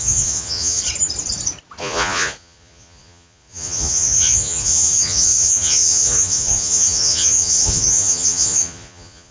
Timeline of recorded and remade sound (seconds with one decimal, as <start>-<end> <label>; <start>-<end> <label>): 0.0-0.8 remade; 0.8-1.8 recorded; 1.8-9.3 remade